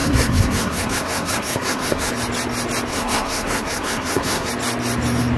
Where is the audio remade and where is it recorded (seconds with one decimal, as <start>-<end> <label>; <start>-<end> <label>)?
0.0-2.1 remade; 2.1-2.9 recorded; 2.9-4.5 remade; 4.5-5.4 recorded